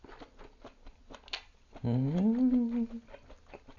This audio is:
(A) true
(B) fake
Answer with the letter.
A